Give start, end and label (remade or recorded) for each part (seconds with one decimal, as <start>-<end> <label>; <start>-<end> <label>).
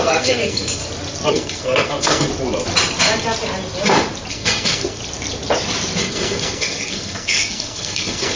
0.0-0.8 remade; 0.8-1.3 recorded; 1.3-2.3 remade; 2.3-4.3 recorded; 4.3-5.0 remade; 5.0-6.0 recorded; 6.0-8.4 remade